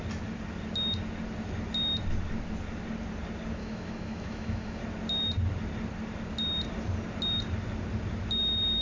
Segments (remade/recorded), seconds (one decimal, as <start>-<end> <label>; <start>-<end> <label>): 0.0-3.6 recorded; 3.6-4.8 remade; 4.8-8.8 recorded